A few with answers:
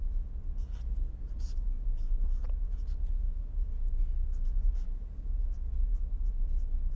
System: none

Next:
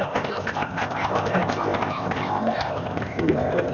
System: codec, ZipCodec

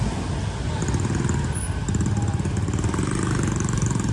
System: none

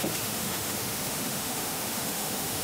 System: autoencoder, DAC-VAE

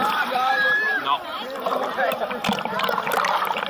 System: vocoder, BigVGAN v2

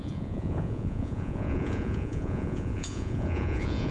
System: vocoder, Vocos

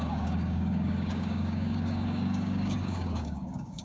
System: codec, DAC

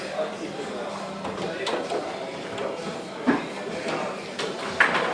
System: vocoder, BigVGAN v2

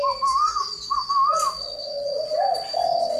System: none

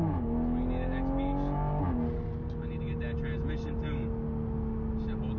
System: none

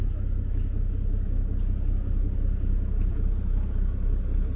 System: none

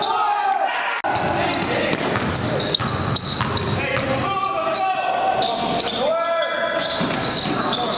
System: none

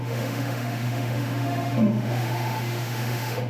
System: autoencoder, DAC-VAE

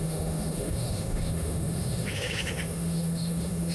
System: autoencoder, DAC-VAE